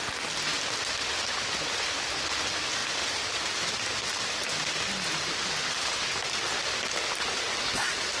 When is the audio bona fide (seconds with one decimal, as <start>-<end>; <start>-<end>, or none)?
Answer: 0.0-8.2